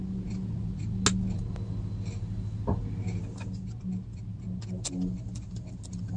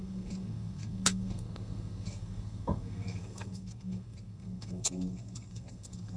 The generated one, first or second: second